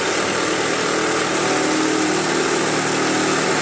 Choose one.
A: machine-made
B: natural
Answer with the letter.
B